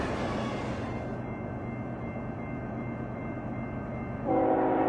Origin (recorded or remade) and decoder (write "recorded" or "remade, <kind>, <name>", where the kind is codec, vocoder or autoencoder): recorded